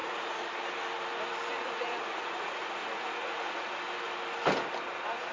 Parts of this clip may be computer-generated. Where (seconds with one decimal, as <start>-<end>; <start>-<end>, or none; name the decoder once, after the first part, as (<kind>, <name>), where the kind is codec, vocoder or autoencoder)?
0.0-0.5 (vocoder, Vocos); 1.6-3.8